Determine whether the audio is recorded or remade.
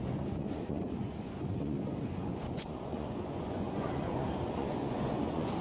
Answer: remade